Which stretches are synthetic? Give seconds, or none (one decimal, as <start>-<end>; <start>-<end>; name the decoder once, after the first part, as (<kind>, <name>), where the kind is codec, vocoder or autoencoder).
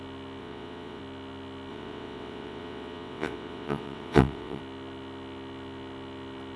0.4-1.0 (vocoder, WaveNeXt); 1.7-4.6